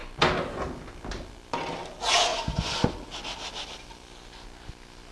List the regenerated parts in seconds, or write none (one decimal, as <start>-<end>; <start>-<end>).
2.3-2.9